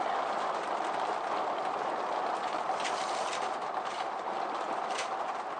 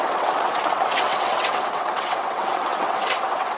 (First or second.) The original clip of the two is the first